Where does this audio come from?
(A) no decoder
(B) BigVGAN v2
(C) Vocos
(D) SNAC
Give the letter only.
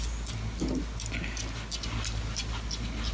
A